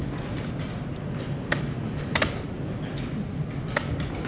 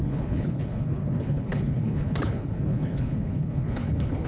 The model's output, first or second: second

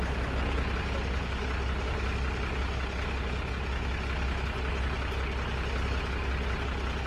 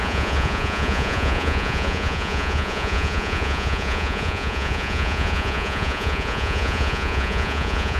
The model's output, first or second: second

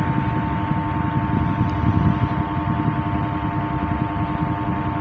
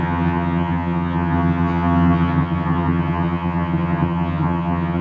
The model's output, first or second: second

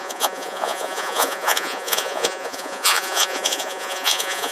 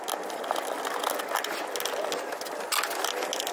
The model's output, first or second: first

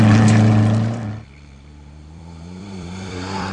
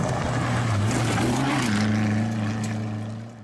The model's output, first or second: first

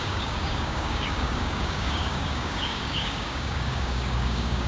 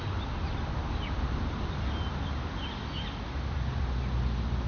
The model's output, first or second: first